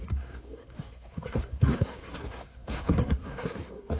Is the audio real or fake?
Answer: fake